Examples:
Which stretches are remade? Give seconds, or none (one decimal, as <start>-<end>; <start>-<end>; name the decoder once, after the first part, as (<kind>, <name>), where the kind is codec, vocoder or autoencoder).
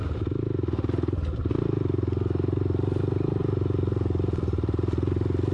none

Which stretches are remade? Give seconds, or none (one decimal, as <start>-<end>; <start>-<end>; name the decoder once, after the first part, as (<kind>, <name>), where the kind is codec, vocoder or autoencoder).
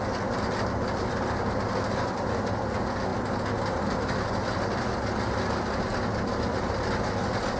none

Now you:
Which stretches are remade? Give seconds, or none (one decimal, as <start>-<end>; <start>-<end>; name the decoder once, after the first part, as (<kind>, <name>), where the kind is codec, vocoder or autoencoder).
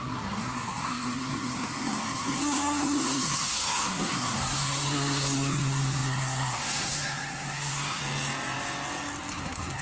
0.0-8.0 (codec, SNAC); 9.3-9.8